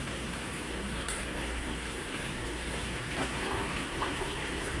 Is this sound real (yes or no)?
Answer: no